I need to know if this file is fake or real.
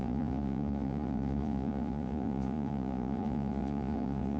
fake